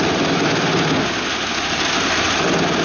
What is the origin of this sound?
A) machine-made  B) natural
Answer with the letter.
B